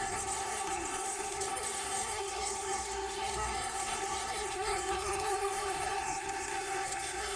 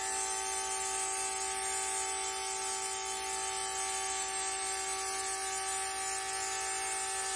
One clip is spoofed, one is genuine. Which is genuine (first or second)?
second